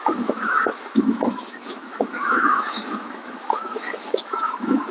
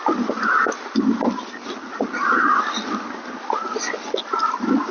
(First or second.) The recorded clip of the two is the second